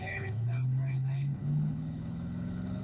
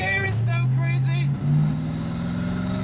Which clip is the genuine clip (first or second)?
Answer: second